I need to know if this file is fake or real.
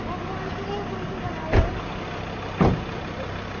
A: real